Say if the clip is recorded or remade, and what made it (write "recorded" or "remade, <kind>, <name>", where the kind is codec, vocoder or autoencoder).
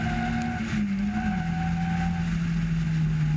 recorded